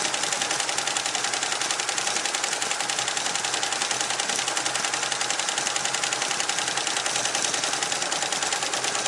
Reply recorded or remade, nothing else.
recorded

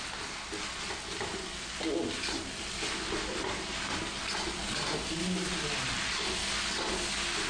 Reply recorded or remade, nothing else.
recorded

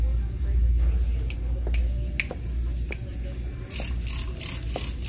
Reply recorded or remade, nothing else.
recorded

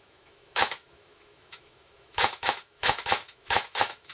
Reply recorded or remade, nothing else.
remade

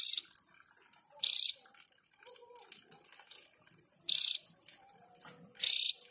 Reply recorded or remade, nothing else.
recorded